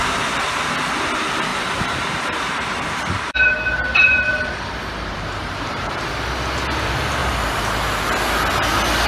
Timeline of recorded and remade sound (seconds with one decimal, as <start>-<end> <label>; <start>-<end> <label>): 0.0-1.5 recorded; 1.5-6.1 remade; 6.1-7.2 recorded; 7.2-8.0 remade; 8.0-9.1 recorded